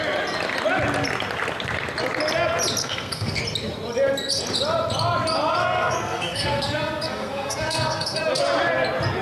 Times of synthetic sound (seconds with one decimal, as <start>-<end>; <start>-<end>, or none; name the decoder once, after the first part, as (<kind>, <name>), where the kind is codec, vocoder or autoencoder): 2.8-3.4 (codec, SNAC); 5.6-8.2